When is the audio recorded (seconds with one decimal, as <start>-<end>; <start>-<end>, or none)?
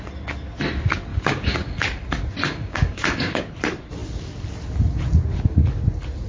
0.0-1.1; 1.8-2.4; 3.4-6.3